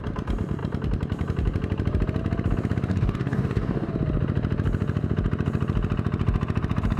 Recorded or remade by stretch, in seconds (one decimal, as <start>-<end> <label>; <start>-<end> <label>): 0.0-2.9 recorded; 2.9-3.9 remade; 3.9-7.0 recorded